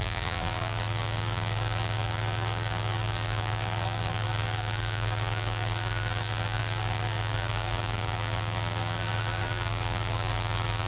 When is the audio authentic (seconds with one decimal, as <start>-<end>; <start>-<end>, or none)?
none